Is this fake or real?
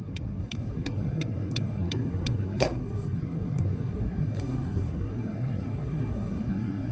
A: fake